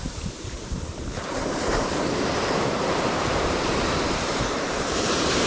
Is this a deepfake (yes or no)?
yes